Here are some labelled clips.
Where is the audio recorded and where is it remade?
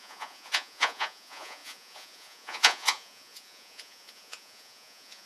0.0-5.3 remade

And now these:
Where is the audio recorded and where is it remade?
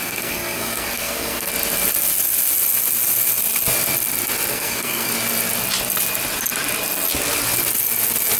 0.0-1.5 remade; 1.5-4.5 recorded; 4.5-5.1 remade; 5.1-8.4 recorded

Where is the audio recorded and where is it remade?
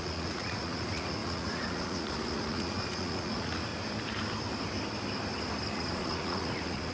0.0-3.7 remade; 3.7-5.7 recorded; 5.7-6.9 remade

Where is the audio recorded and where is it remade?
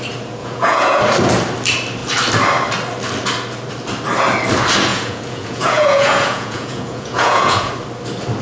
0.0-0.4 recorded; 0.4-1.0 remade; 1.0-4.9 recorded; 4.9-7.7 remade; 7.7-8.4 recorded